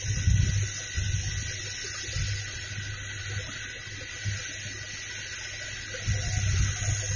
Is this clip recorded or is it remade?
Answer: recorded